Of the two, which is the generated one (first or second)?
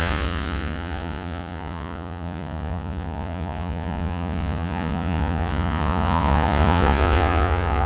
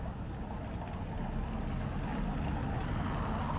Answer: first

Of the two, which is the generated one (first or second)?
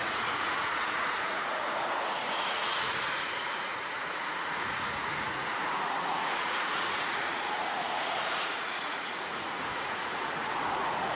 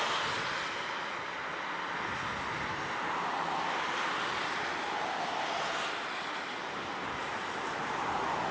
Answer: first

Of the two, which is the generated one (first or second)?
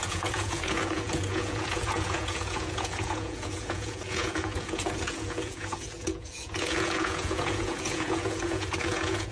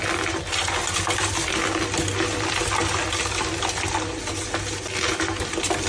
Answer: first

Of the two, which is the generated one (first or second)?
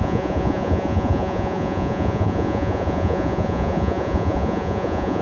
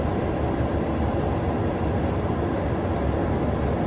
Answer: first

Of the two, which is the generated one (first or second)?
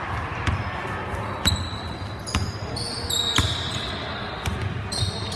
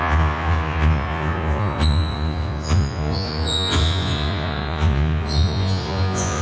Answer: second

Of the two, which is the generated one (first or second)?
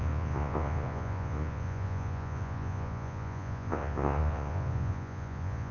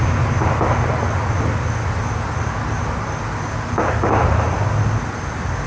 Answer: first